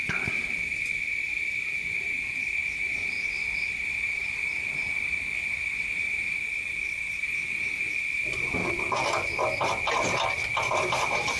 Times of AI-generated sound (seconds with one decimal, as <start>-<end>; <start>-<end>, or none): 0.0-8.6; 11.0-11.4